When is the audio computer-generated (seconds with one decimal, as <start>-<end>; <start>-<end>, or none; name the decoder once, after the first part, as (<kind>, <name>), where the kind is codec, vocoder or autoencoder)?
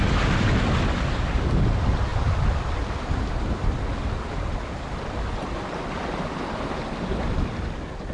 none